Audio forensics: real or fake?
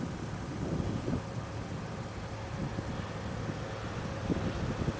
real